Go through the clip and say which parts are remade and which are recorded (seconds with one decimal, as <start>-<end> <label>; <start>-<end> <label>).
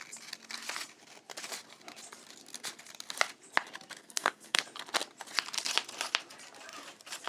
0.0-4.0 recorded; 4.0-4.6 remade; 4.6-7.3 recorded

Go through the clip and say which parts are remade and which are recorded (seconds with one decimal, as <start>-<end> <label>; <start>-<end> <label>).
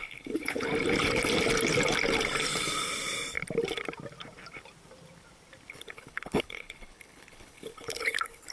0.0-0.7 remade; 0.7-5.7 recorded; 5.7-8.5 remade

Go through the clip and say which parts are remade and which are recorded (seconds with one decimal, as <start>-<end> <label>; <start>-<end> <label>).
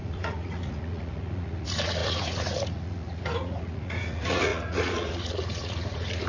0.0-6.3 remade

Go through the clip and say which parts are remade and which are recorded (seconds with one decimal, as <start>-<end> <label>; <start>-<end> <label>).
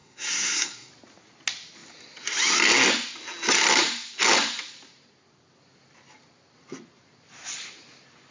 0.0-0.9 remade; 0.9-8.3 recorded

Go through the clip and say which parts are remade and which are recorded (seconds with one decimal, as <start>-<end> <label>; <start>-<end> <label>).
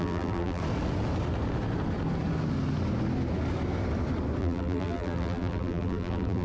0.0-0.6 remade; 0.6-4.4 recorded; 4.4-6.4 remade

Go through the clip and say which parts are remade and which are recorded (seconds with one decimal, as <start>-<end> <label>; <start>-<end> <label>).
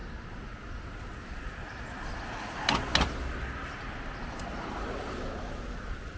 0.0-6.2 recorded